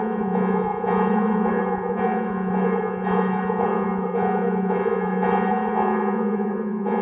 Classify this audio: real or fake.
fake